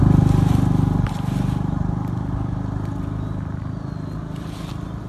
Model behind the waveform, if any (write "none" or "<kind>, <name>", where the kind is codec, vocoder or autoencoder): none